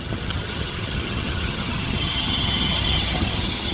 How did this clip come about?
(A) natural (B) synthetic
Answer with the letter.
B